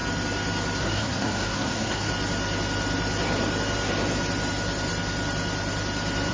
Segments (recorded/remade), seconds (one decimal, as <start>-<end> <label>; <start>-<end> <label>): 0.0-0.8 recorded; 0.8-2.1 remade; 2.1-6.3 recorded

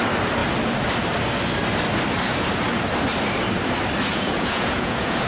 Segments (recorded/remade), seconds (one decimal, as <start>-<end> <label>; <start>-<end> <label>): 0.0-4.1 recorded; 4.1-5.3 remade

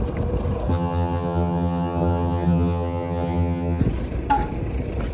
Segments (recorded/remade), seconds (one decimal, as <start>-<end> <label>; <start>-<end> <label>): 0.0-0.7 recorded; 0.7-3.8 remade; 3.8-5.1 recorded